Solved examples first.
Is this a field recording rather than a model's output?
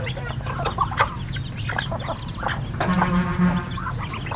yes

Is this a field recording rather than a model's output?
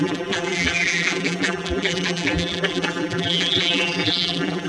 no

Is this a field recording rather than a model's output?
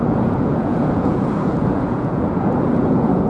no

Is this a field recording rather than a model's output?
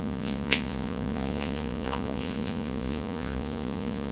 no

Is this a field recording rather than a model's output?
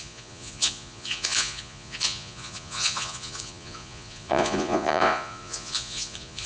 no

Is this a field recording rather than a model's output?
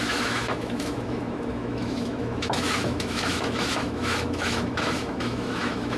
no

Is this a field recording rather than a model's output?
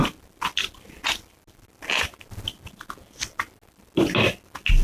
yes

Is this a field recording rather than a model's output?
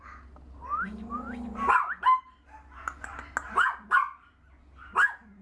yes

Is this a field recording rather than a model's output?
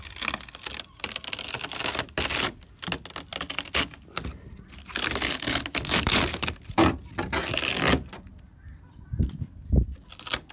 yes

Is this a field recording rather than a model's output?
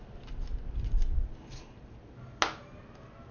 yes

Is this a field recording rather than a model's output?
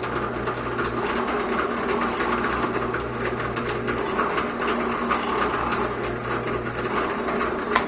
yes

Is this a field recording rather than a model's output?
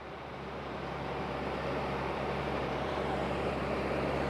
no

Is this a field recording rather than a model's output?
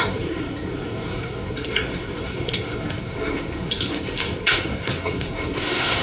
no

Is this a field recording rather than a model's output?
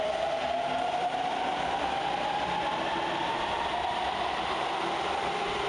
yes